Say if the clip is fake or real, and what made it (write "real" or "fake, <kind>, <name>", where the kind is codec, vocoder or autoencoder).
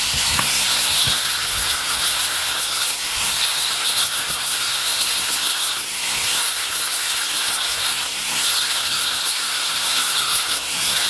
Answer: fake, codec, SNAC